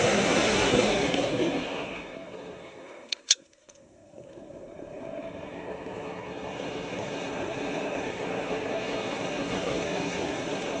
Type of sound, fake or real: fake